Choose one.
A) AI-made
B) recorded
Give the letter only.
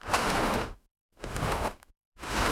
A